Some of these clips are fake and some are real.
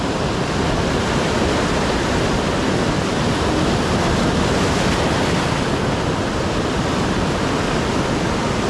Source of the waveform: real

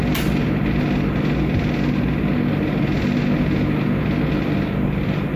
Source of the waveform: real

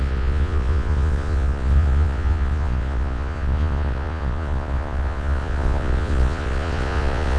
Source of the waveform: fake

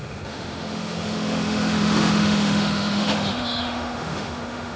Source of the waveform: fake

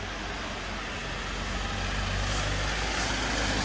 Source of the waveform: real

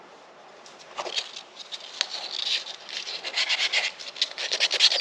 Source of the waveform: real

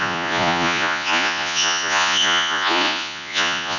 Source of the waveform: fake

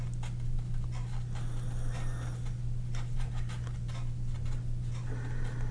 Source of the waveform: real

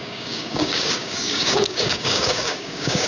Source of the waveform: fake